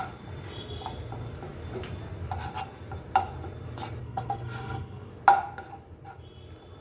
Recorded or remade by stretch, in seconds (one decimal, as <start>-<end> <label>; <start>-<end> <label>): 0.0-4.0 recorded; 4.0-5.1 remade; 5.1-6.8 recorded